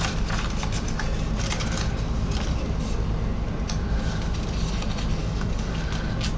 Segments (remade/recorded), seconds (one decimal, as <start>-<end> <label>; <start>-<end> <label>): 0.0-5.2 recorded; 5.2-5.8 remade; 5.8-6.4 recorded